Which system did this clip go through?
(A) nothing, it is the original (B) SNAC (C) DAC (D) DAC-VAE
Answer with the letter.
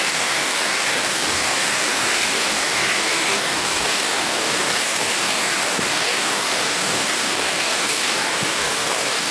C